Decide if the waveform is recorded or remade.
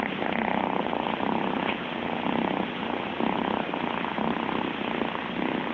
recorded